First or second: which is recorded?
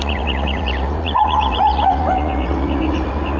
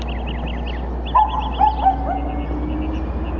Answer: second